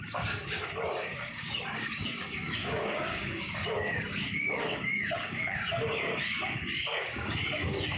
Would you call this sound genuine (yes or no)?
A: no